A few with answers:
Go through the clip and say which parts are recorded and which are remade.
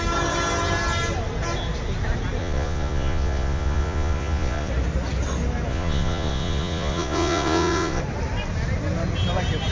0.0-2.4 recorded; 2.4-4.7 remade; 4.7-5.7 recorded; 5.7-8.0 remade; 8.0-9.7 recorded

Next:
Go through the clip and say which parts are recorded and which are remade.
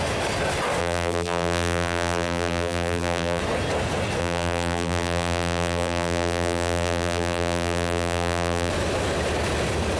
0.0-0.8 recorded; 0.8-3.4 remade; 3.4-4.2 recorded; 4.2-8.7 remade; 8.7-10.0 recorded